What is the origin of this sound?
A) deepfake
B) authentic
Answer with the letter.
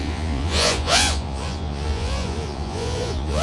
A